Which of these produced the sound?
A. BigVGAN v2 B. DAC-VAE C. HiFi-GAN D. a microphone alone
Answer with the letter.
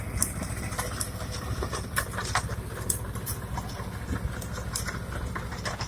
D